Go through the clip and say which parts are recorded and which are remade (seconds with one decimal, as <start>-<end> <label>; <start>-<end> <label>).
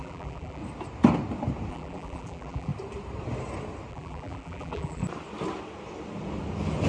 0.0-0.6 remade; 0.6-1.7 recorded; 1.7-2.7 remade; 2.7-3.9 recorded; 3.9-5.0 remade; 5.0-6.9 recorded